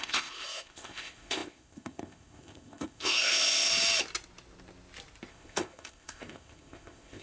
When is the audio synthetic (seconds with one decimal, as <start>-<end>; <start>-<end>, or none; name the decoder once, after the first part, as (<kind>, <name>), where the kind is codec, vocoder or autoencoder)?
0.0-3.7 (codec, ZipCodec); 5.3-7.2